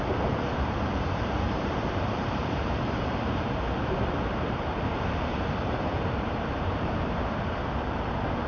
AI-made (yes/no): yes